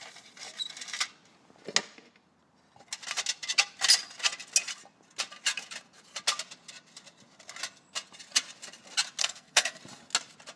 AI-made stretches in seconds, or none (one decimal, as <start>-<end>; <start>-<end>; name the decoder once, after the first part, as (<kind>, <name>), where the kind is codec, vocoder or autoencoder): 9.2-9.8 (codec, SNAC)